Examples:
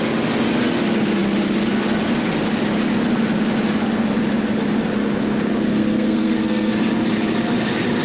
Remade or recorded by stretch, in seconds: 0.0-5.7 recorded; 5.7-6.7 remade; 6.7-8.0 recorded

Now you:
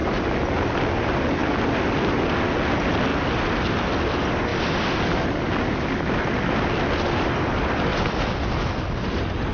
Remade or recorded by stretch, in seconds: 0.0-9.5 recorded

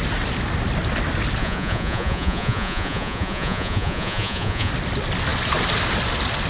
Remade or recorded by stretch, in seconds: 0.0-1.4 recorded; 1.4-4.7 remade; 4.7-6.5 recorded